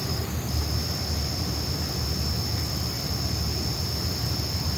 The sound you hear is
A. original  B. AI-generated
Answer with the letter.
A